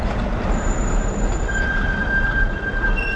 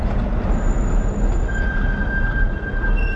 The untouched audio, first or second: second